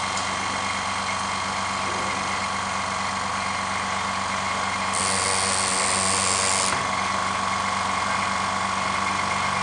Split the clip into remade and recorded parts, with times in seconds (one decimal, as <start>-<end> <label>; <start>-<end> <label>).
0.0-9.6 recorded